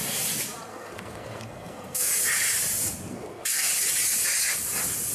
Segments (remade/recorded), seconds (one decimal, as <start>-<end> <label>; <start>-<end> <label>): 0.0-0.7 recorded; 0.7-2.1 remade; 2.1-3.1 recorded; 3.1-3.7 remade; 3.7-5.1 recorded